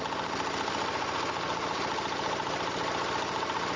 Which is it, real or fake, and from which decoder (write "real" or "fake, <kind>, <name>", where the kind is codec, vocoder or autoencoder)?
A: real